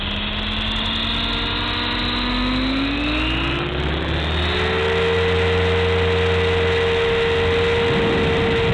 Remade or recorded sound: recorded